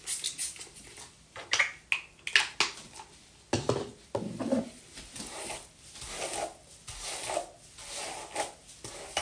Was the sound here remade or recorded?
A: recorded